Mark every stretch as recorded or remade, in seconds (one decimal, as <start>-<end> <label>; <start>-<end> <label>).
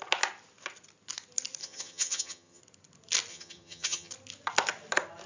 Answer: 0.0-1.6 recorded; 1.6-2.6 remade; 2.6-3.3 recorded; 3.3-4.1 remade; 4.1-5.3 recorded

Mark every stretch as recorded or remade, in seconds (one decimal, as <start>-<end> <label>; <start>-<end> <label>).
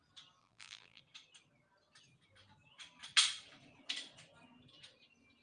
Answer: 0.0-0.4 recorded; 0.4-1.0 remade; 1.0-5.4 recorded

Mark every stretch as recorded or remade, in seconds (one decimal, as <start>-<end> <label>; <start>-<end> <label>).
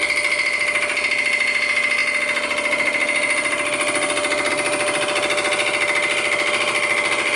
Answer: 0.0-7.3 recorded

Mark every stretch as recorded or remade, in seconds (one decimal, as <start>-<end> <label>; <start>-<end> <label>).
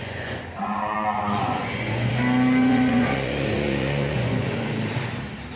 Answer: 0.0-2.1 remade; 2.1-2.6 recorded; 2.6-4.7 remade; 4.7-5.6 recorded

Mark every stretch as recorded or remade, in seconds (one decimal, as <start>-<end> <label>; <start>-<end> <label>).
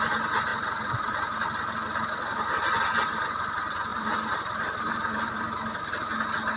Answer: 0.0-0.5 recorded; 0.5-1.1 remade; 1.1-3.9 recorded; 3.9-5.4 remade; 5.4-6.6 recorded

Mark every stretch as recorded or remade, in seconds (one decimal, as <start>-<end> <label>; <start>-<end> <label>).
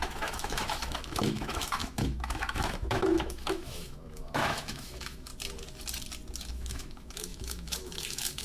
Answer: 0.0-5.3 remade; 5.3-6.5 recorded; 6.5-8.4 remade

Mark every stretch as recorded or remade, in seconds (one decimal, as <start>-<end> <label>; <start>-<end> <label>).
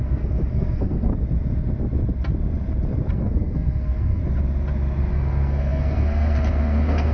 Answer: 0.0-1.1 remade; 1.1-3.1 recorded; 3.1-4.2 remade; 4.2-5.1 recorded; 5.1-7.1 remade